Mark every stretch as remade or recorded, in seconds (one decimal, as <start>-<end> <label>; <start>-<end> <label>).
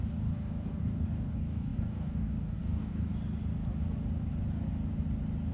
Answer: 0.0-3.1 remade; 3.1-5.5 recorded